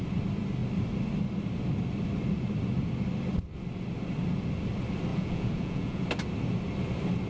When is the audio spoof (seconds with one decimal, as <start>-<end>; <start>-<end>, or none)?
5.1-6.0

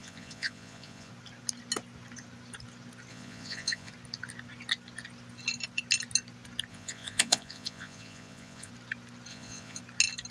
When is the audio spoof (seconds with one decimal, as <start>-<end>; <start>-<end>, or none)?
0.0-1.1; 3.1-3.9; 6.7-8.7; 9.3-9.8